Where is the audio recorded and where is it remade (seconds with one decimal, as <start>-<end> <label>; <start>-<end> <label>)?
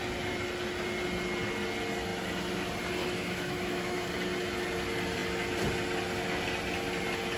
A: 0.0-3.0 recorded; 3.0-4.1 remade; 4.1-7.4 recorded